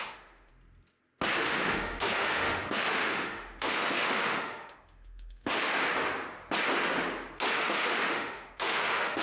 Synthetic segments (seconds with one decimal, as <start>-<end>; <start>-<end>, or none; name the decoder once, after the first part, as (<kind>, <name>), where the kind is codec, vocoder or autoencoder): 0.0-0.5 (autoencoder, DAC-VAE); 1.3-5.8; 7.5-9.2

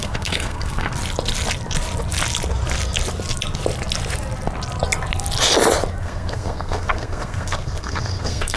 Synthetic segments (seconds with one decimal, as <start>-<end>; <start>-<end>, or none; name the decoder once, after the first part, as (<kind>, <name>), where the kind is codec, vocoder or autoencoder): 0.0-0.9 (codec, SNAC); 6.0-8.6

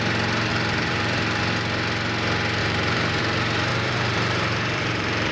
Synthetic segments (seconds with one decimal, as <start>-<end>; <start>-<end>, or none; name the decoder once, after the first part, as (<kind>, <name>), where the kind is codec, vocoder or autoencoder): 0.5-1.4 (vocoder, BigVGAN v2); 2.6-3.2; 3.7-5.3

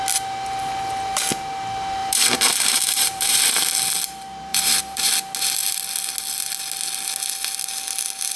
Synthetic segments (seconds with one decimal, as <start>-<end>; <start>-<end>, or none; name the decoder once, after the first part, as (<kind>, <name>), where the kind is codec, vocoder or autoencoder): 2.0-3.7 (vocoder, BigVGAN v2); 4.5-5.1